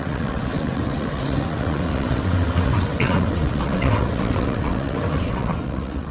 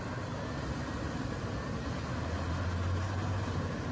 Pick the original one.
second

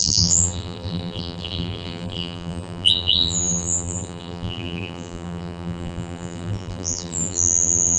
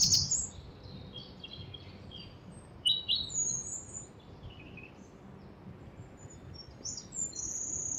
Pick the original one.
second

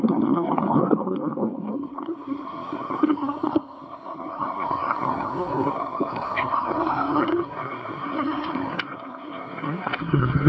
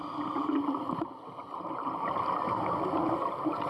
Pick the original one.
second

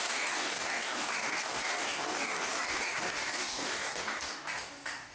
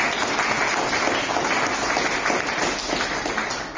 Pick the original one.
second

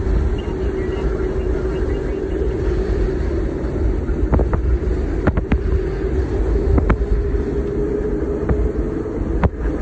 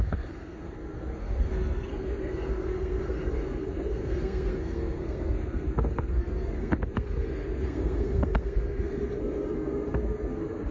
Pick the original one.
first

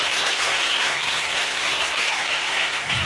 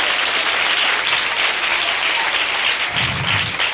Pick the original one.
second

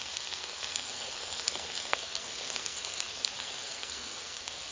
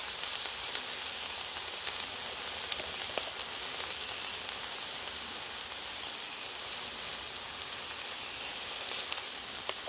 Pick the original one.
second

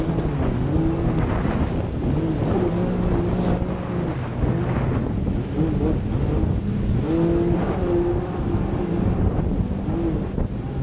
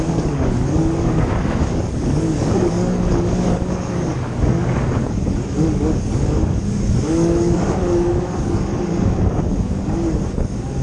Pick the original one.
first